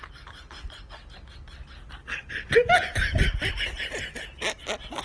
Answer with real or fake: real